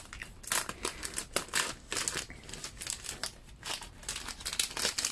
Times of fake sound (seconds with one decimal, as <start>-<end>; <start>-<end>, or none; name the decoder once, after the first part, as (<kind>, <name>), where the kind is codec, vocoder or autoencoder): none